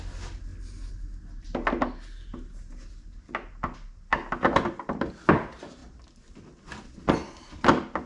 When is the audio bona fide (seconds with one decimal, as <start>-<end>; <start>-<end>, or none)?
0.0-8.1